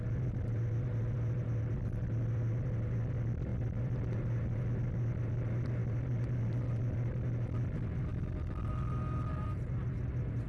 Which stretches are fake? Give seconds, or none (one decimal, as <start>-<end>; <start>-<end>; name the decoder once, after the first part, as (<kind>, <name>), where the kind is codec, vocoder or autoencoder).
none